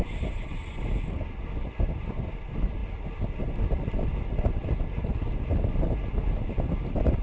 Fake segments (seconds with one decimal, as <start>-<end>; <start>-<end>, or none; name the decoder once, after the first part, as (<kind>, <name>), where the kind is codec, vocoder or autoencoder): none